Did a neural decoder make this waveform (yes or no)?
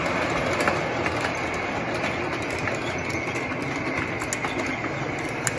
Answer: no